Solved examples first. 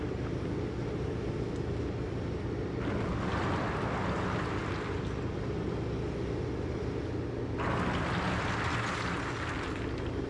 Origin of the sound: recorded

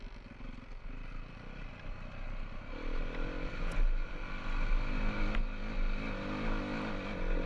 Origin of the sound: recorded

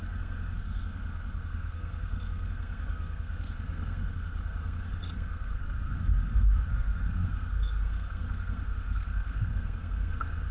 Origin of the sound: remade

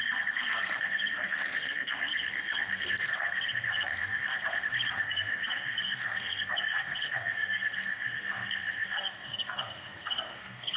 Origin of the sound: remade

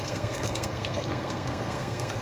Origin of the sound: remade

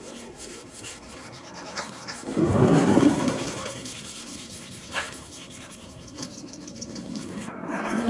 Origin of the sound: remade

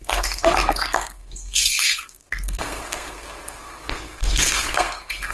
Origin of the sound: remade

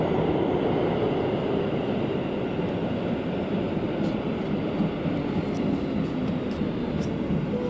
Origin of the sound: recorded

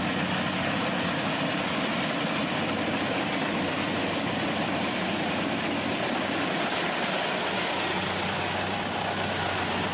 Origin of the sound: recorded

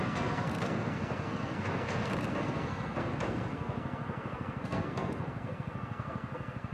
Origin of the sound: remade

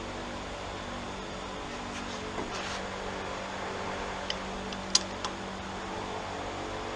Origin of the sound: recorded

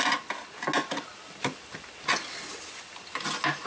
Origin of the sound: recorded